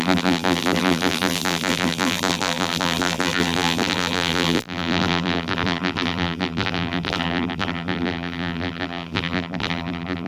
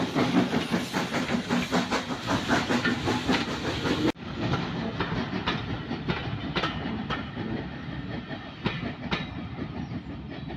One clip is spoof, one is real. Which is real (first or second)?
second